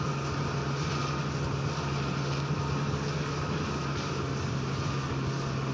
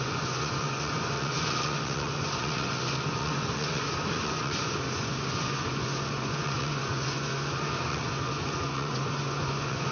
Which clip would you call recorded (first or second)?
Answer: first